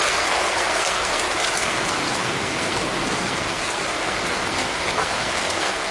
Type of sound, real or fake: fake